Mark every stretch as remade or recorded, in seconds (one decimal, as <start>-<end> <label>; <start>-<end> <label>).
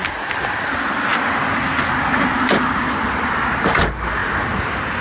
0.0-5.0 recorded